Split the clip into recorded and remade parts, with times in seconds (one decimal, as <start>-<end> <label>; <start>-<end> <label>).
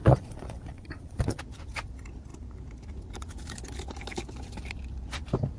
0.0-1.4 remade; 1.4-5.6 recorded